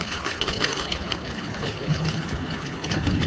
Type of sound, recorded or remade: remade